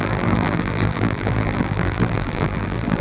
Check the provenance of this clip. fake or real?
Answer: fake